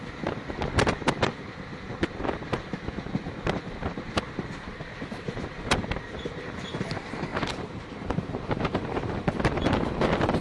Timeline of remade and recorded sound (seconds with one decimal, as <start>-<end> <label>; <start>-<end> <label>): 0.0-7.3 recorded; 7.3-9.1 remade; 9.1-10.4 recorded